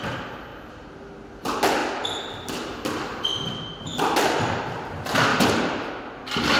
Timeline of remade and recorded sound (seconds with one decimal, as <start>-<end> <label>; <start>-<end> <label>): 0.0-0.5 recorded; 0.5-1.0 remade; 1.0-5.3 recorded; 5.3-5.9 remade; 5.9-6.6 recorded

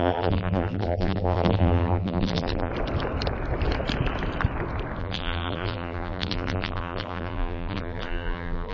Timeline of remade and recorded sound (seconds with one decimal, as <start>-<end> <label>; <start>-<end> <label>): 0.0-2.7 remade; 2.7-5.0 recorded; 5.0-8.7 remade

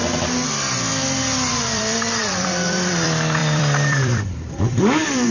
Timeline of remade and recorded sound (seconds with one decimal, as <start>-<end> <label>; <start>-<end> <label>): 0.0-1.6 recorded; 1.6-5.3 remade

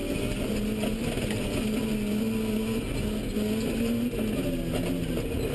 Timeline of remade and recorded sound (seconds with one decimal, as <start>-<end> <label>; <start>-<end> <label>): 0.0-5.5 recorded

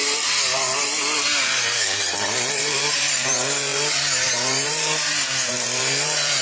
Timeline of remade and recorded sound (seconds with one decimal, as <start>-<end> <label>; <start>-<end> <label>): 0.0-6.4 remade

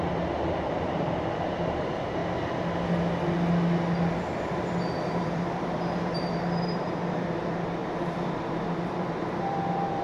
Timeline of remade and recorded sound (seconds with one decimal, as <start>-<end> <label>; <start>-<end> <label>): 0.0-2.2 remade; 2.2-4.1 recorded; 4.1-10.0 remade